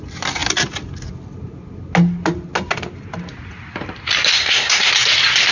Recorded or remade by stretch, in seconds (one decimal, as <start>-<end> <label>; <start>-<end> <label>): 0.0-4.3 recorded; 4.3-4.9 remade; 4.9-5.5 recorded